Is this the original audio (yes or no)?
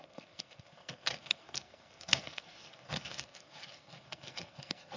no